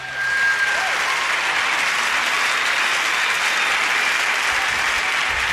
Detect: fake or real real